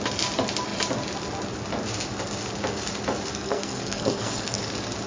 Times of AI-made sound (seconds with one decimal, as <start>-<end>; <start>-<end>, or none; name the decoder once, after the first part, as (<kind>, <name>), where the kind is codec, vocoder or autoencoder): 3.3-4.6 (codec, SNAC)